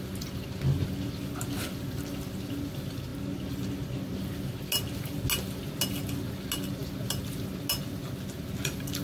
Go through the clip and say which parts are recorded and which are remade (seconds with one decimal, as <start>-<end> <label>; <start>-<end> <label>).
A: 0.0-9.0 recorded